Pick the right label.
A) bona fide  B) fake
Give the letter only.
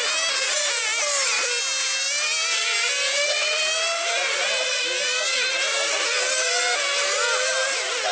A